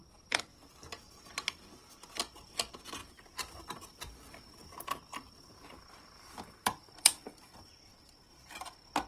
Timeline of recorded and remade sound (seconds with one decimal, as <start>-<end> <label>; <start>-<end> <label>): 0.0-3.0 recorded; 3.0-7.7 remade; 7.7-9.1 recorded

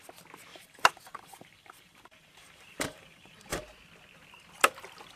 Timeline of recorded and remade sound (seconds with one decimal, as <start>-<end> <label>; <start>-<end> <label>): 0.0-0.5 recorded; 0.5-3.6 remade; 3.6-5.2 recorded

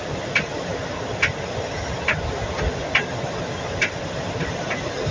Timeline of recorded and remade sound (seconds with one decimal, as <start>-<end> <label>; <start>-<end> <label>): 0.0-0.7 remade; 0.7-3.7 recorded; 3.7-5.1 remade

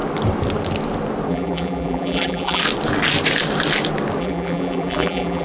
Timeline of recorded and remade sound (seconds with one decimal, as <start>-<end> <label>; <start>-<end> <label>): 0.0-1.3 recorded; 1.3-2.6 remade; 2.6-4.2 recorded; 4.2-5.4 remade

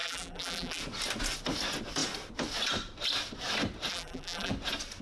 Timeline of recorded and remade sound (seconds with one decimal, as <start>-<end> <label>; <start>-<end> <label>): 0.0-0.8 remade; 0.8-3.9 recorded; 3.9-4.5 remade; 4.5-5.0 recorded